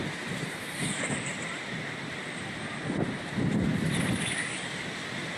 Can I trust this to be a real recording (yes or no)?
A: no